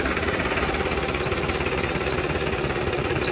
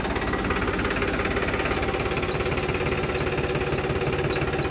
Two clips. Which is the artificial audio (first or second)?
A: first